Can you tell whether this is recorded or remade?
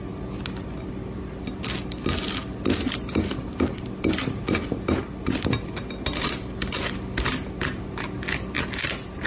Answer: recorded